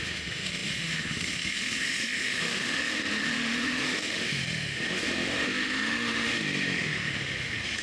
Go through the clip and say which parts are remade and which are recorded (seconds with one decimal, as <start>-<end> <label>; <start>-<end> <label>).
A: 0.0-7.8 remade